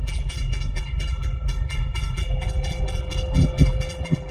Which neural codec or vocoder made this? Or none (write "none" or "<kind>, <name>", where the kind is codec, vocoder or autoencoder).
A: vocoder, BigVGAN v2